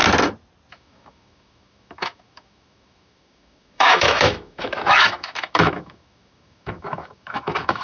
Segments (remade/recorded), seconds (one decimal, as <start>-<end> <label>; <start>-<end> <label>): 0.0-0.7 recorded; 0.7-7.8 remade